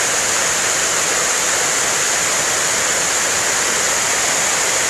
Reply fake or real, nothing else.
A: real